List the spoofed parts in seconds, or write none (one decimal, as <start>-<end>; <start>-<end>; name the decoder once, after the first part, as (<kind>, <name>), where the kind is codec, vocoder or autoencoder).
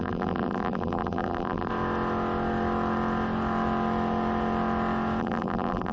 0.0-1.7 (vocoder, BigVGAN v2); 5.2-5.9